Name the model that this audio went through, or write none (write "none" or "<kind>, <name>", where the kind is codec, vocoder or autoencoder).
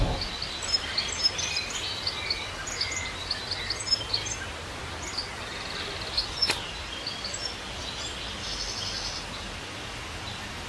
none